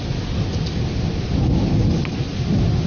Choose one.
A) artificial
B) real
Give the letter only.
B